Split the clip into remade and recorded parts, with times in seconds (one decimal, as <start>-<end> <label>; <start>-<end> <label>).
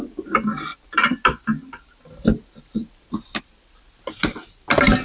0.0-5.0 recorded